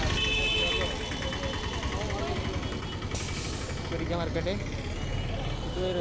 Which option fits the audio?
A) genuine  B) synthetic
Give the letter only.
A